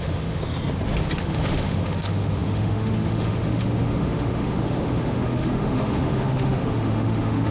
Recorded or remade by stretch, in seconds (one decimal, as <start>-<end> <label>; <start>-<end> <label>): 0.0-0.4 remade; 0.4-1.2 recorded; 1.2-7.5 remade